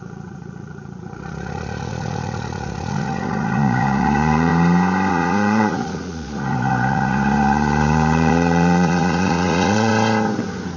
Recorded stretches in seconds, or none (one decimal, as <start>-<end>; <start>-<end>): 4.5-5.1; 9.9-10.8